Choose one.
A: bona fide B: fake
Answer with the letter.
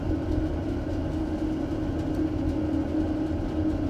A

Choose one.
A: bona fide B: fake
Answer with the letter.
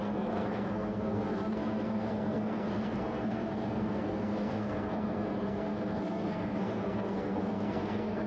B